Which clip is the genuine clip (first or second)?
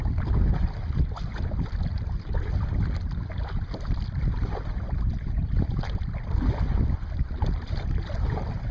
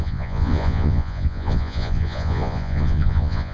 first